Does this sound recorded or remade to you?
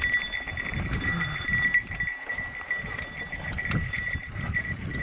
recorded